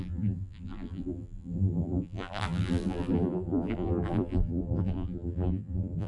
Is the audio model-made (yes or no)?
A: yes